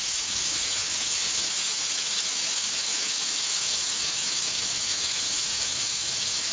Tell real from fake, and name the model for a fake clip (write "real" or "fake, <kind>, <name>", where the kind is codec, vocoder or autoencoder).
fake, autoencoder, DAC-VAE